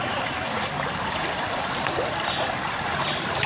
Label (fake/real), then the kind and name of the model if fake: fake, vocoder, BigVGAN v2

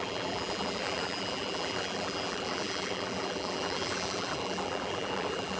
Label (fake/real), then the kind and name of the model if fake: fake, vocoder, BigVGAN v2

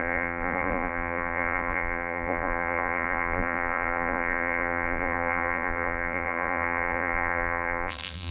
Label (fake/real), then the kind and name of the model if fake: fake, vocoder, BigVGAN v2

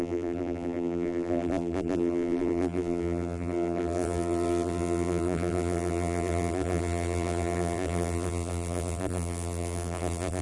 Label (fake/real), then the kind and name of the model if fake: fake, vocoder, BigVGAN v2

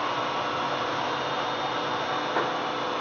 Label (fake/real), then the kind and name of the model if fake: real